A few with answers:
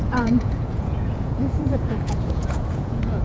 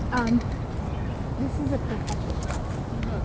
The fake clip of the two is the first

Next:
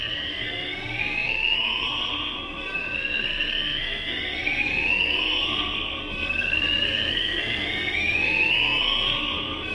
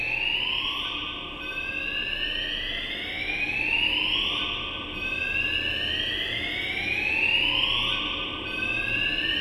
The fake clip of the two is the first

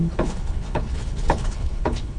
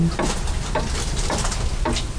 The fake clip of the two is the first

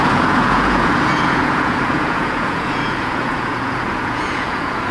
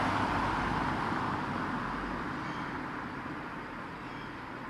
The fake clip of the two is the first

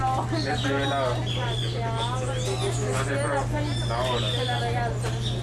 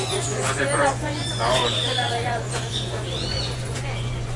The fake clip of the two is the second